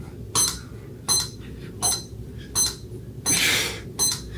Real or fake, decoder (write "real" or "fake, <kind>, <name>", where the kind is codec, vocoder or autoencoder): real